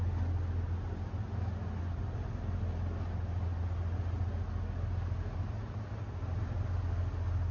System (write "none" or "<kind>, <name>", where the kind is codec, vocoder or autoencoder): none